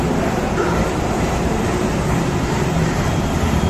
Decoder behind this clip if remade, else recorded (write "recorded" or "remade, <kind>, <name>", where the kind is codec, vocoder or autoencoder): remade, vocoder, BigVGAN v2